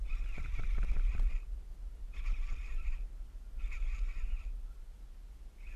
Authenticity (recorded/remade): recorded